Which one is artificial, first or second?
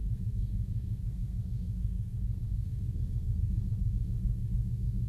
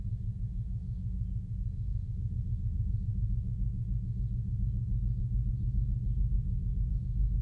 first